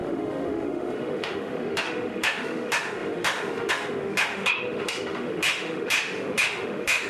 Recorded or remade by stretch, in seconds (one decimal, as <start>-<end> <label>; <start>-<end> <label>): 0.0-7.1 remade